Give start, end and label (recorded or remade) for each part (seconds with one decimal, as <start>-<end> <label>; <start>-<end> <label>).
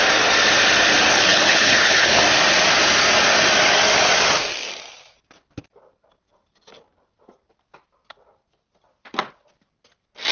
0.0-1.1 recorded; 1.1-2.2 remade; 2.2-10.3 recorded